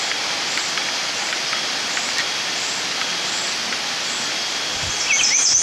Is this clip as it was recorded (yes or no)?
yes